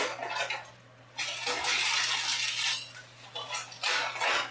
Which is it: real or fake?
real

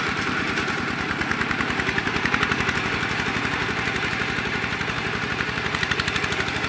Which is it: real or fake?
fake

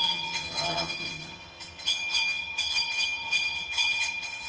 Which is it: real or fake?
fake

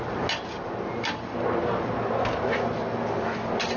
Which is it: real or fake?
real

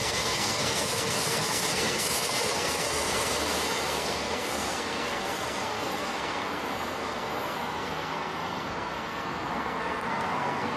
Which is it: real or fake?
fake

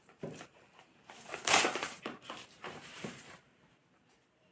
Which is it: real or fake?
fake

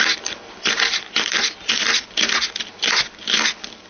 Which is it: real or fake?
real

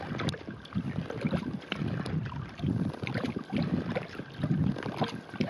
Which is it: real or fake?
real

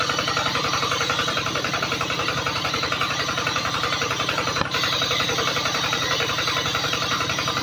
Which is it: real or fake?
fake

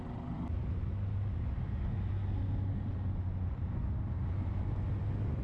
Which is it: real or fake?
real